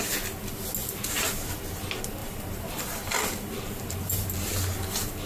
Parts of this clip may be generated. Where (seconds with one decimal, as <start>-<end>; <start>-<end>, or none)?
0.8-1.5; 2.2-4.5